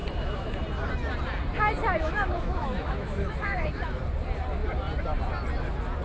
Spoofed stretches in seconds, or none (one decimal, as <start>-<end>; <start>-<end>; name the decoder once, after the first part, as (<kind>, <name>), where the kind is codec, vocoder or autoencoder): 0.0-0.6 (autoencoder, DAC-VAE); 2.0-4.0